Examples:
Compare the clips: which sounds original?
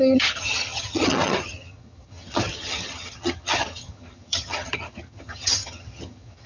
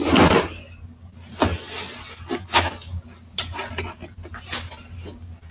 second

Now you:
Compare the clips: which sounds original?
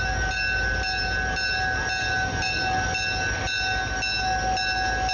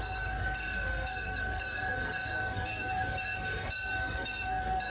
first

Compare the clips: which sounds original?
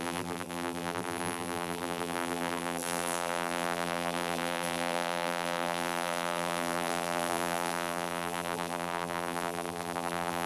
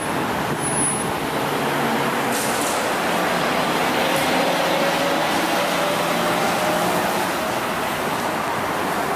second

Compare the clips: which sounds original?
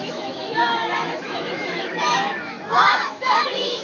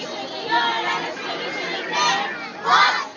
second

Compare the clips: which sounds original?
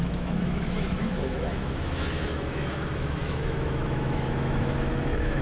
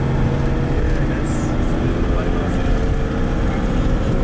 second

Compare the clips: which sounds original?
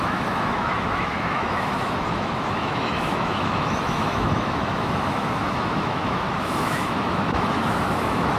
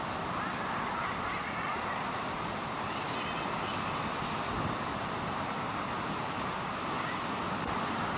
second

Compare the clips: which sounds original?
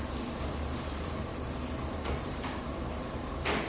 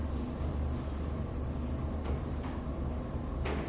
second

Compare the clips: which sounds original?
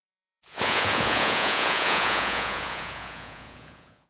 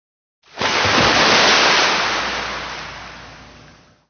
second